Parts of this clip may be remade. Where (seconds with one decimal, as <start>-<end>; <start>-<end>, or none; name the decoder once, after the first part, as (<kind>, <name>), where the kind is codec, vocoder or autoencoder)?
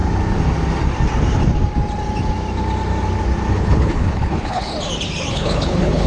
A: 3.5-4.7 (codec, HILCodec); 5.3-6.1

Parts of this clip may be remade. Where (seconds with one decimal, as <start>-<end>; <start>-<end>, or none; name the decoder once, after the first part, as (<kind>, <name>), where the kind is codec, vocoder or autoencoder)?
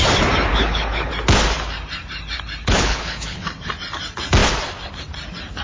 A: 0.5-1.1 (codec, HILCodec); 2.6-3.4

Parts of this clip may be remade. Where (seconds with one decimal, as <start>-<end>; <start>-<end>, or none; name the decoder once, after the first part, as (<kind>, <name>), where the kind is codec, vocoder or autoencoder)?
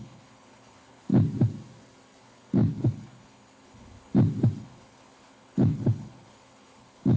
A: 0.0-1.1 (codec, HILCodec); 2.2-4.1; 4.6-7.2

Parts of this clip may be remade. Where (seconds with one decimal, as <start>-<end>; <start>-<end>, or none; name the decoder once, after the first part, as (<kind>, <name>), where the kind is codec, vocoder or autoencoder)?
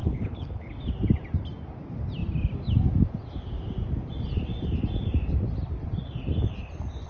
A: 0.0-0.7 (codec, HILCodec)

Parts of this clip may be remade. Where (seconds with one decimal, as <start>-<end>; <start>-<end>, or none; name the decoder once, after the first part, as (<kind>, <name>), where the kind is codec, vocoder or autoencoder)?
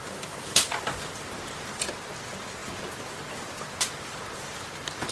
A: none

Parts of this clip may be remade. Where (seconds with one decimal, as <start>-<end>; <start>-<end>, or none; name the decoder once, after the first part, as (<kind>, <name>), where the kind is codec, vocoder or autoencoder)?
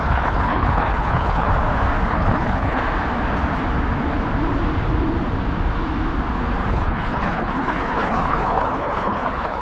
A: 0.0-1.5 (codec, HILCodec); 2.1-2.8; 6.7-9.6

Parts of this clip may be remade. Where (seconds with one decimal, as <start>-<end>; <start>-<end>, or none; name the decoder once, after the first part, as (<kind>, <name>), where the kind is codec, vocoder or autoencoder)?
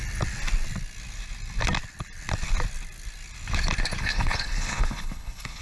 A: 4.0-5.6 (codec, HILCodec)